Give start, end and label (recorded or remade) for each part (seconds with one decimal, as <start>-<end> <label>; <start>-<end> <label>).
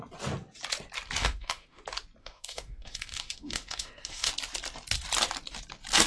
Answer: 0.0-1.2 recorded; 1.2-1.8 remade; 1.8-2.2 recorded; 2.2-4.3 remade; 4.3-6.1 recorded